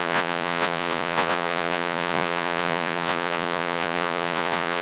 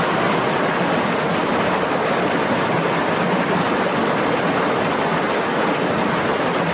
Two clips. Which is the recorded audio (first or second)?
second